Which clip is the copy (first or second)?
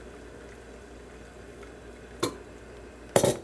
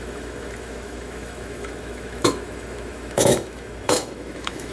second